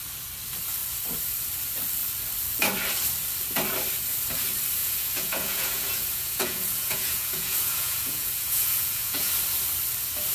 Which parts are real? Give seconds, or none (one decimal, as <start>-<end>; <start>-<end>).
0.0-4.8; 9.3-10.3